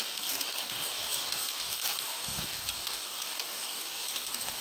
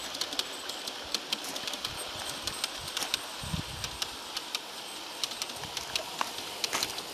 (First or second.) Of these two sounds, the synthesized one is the first